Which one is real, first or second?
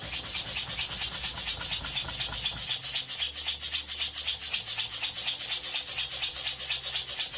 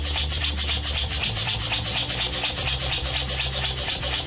first